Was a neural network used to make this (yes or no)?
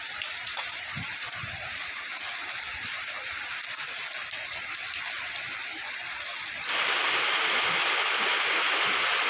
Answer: yes